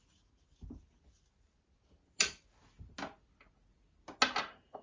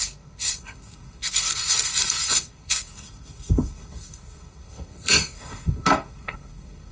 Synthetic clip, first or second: second